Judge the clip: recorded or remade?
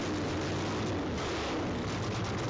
recorded